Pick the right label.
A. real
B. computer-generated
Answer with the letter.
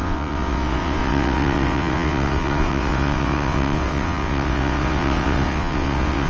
B